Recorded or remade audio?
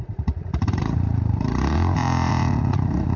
remade